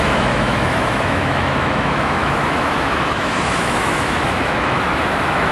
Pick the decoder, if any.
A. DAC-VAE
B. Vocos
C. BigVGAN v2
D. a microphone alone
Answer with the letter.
A